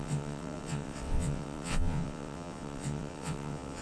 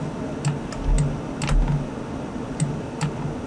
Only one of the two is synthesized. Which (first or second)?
first